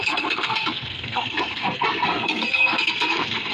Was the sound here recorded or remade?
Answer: remade